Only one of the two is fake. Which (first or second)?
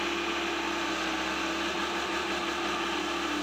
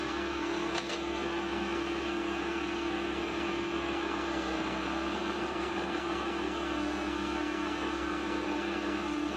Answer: second